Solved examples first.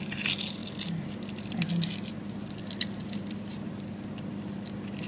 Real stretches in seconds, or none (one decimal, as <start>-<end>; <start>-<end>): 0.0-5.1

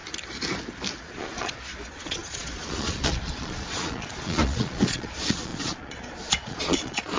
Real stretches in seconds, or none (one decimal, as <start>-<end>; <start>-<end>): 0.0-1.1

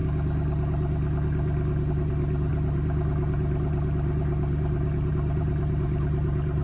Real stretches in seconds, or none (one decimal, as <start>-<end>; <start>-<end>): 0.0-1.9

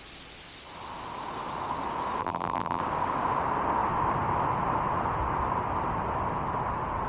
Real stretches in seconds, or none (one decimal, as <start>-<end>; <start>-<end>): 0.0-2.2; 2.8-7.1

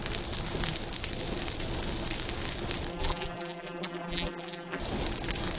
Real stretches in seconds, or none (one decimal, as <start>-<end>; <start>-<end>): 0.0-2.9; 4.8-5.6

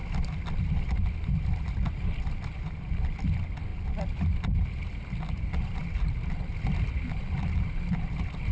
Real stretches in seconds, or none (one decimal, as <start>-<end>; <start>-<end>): 0.0-8.5

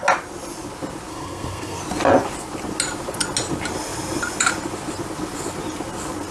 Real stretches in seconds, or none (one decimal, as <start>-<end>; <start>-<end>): 0.0-1.1; 1.8-6.3

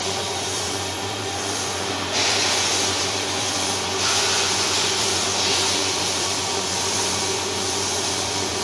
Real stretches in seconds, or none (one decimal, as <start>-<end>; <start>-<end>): none